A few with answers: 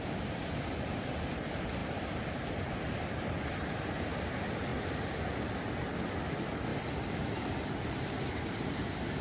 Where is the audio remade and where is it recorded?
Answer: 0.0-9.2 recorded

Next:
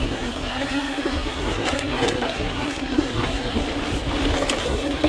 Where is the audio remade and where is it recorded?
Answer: 0.0-3.6 remade; 3.6-4.6 recorded; 4.6-5.1 remade

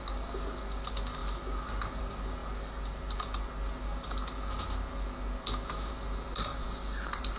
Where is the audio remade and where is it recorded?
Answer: 0.0-6.5 recorded; 6.5-7.4 remade

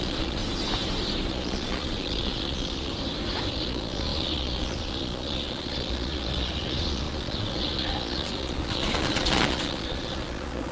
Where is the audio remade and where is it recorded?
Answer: 0.0-0.4 remade; 0.4-1.3 recorded; 1.3-2.9 remade; 2.9-3.5 recorded; 3.5-10.7 remade

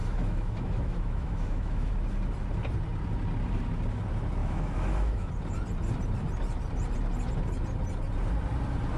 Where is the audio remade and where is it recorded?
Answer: 0.0-1.9 remade; 1.9-4.4 recorded; 4.4-5.3 remade; 5.3-9.0 recorded